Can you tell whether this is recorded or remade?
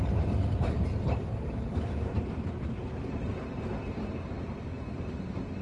remade